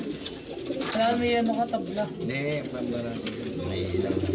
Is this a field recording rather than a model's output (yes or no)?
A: yes